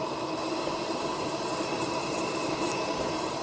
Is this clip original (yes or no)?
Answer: no